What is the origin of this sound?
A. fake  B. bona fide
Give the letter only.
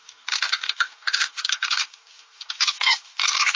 A